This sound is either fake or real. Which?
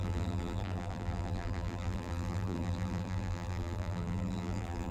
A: fake